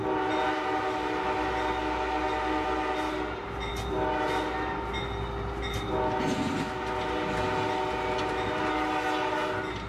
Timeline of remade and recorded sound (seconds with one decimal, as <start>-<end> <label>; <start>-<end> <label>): 0.0-9.9 recorded